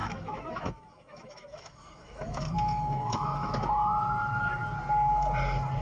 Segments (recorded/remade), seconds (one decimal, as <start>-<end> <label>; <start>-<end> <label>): 0.0-3.5 remade; 3.5-5.8 recorded